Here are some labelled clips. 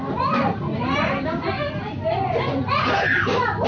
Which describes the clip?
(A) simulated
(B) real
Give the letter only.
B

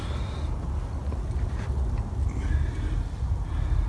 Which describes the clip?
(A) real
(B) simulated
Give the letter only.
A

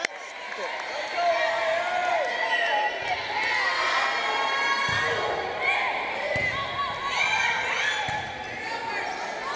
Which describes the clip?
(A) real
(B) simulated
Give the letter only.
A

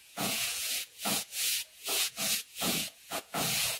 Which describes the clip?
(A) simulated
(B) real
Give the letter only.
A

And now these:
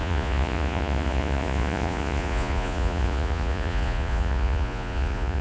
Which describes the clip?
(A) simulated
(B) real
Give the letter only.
A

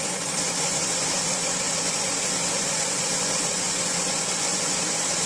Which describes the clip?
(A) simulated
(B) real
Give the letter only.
A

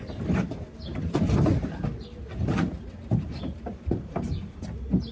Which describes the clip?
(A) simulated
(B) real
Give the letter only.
B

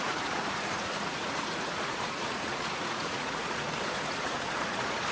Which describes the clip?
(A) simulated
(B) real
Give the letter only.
A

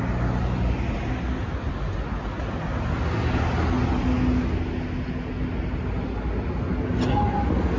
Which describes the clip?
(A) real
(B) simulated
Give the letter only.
A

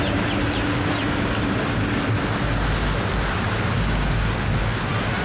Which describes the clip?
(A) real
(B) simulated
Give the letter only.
A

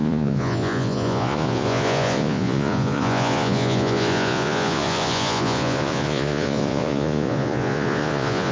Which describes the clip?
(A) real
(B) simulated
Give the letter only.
B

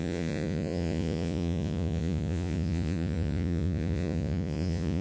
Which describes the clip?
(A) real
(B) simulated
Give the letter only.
B